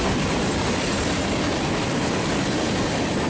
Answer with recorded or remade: recorded